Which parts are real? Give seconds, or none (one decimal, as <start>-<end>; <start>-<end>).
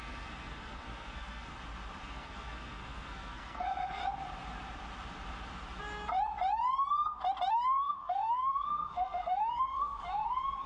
1.5-2.0; 4.0-7.5